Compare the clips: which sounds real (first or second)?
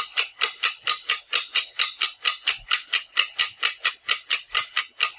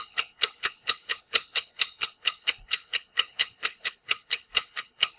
first